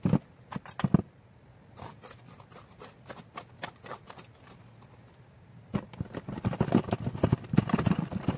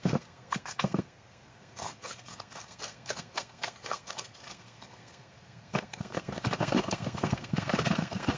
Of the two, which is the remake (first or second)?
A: second